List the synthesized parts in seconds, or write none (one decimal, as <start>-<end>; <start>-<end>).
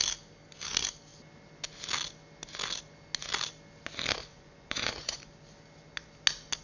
4.3-5.2